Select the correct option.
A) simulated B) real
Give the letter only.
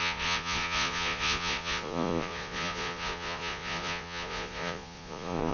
A